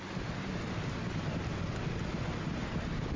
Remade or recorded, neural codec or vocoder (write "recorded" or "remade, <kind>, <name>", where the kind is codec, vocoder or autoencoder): recorded